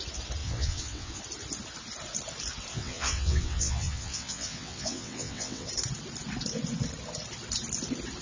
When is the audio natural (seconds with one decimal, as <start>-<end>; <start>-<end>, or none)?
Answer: 0.0-0.4; 1.2-2.7; 5.7-8.2